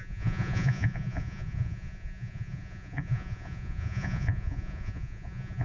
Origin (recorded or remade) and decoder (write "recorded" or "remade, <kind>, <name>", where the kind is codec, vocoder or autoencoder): remade, vocoder, Vocos